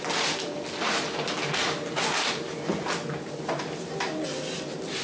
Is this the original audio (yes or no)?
yes